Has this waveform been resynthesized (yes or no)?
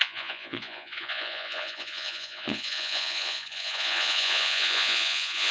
yes